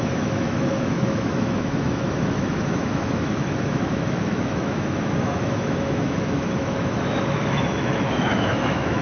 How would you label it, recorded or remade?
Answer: remade